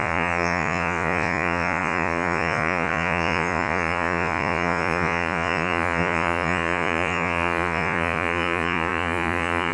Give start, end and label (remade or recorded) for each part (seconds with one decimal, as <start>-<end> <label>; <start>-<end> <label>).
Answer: 0.0-9.7 remade